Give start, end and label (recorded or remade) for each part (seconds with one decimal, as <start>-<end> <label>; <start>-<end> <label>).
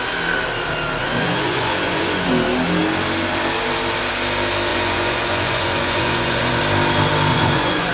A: 0.0-1.0 recorded; 1.0-2.3 remade; 2.3-4.7 recorded; 4.7-6.6 remade; 6.6-7.3 recorded; 7.3-7.9 remade